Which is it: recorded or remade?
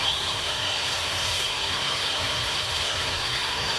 remade